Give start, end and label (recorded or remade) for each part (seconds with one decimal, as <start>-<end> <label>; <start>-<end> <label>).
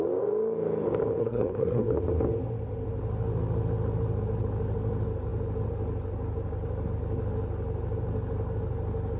0.0-1.2 recorded; 1.2-1.9 remade; 1.9-9.2 recorded